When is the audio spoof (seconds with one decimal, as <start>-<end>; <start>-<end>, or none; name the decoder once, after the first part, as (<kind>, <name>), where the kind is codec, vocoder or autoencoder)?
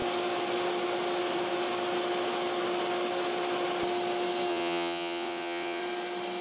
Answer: 4.5-5.8 (vocoder, WaveNeXt)